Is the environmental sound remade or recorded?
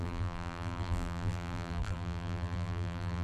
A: remade